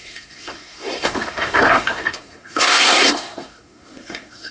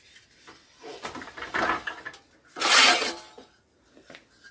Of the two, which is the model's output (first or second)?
first